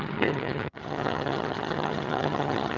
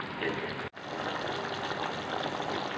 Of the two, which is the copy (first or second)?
first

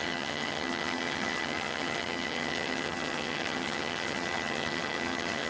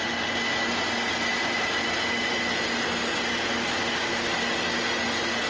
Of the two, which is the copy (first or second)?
first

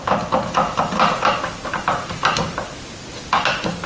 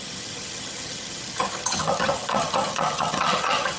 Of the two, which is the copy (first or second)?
second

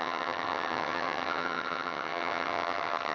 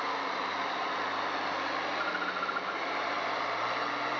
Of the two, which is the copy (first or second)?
first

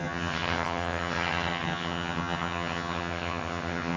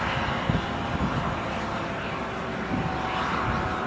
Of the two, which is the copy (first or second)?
first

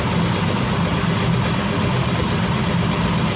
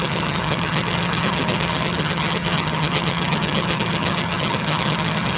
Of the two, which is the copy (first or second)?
second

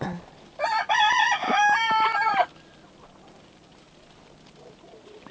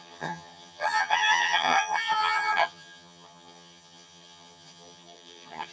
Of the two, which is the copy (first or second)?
second